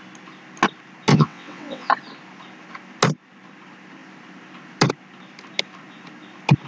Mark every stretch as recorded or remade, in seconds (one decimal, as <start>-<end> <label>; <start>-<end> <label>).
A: 0.0-1.1 recorded; 1.1-1.9 remade; 1.9-6.7 recorded